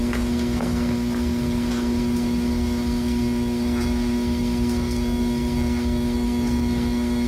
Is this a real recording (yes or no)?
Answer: no